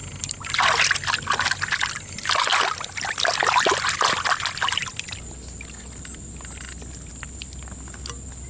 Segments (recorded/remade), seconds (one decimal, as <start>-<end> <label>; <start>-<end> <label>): 0.0-8.5 recorded